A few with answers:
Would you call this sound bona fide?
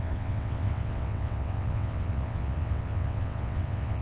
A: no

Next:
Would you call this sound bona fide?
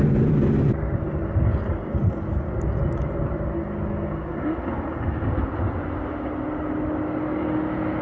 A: yes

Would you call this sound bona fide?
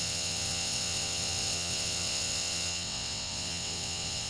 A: no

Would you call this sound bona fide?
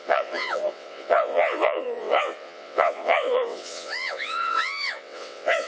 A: no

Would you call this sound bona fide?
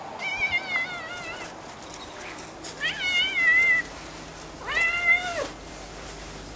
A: yes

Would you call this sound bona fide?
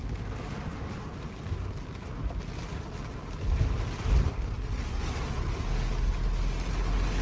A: yes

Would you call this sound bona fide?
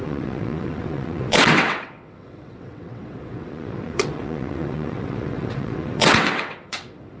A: no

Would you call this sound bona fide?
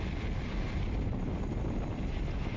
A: yes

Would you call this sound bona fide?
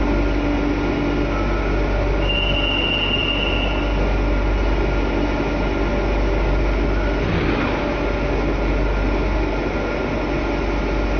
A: yes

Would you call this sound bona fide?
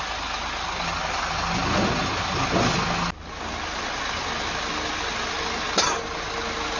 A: yes